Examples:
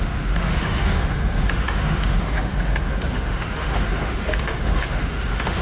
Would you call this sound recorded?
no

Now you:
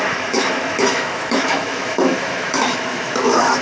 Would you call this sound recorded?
no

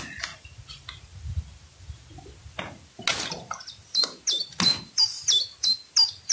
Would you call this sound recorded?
yes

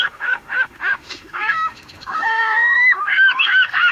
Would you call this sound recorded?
no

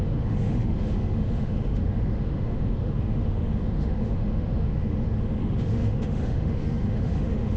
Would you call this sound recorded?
no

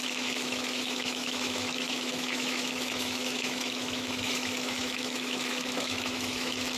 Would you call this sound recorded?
no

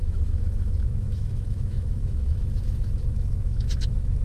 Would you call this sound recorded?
no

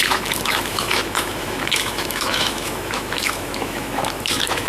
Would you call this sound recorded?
no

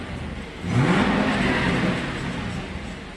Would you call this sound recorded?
yes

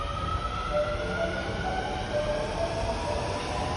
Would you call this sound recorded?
yes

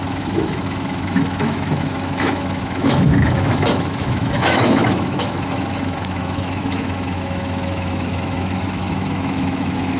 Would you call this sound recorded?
no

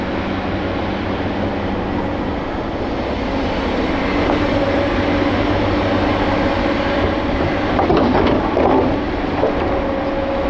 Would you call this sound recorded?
yes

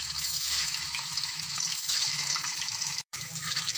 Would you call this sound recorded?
no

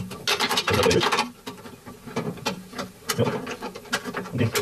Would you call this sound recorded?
yes